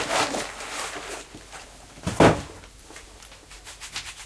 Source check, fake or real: real